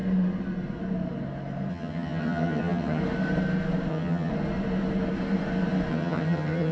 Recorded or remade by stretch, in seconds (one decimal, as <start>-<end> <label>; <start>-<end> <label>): 0.0-1.7 recorded; 1.7-3.0 remade; 3.0-3.9 recorded; 3.9-4.3 remade; 4.3-5.9 recorded; 5.9-6.7 remade